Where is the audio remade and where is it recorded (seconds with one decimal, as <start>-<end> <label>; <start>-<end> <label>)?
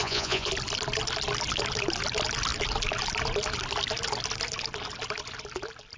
0.0-0.5 remade; 0.5-6.0 recorded